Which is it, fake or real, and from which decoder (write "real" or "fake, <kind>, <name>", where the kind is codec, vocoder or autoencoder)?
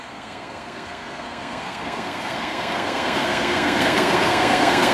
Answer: fake, codec, SNAC